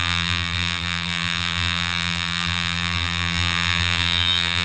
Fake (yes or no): yes